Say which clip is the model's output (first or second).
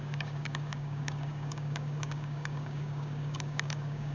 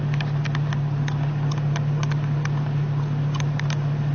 first